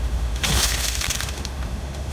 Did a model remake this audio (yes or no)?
yes